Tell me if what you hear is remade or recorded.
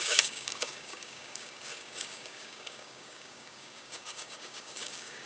remade